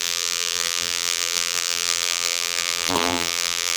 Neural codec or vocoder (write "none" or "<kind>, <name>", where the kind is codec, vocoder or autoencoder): vocoder, BigVGAN v2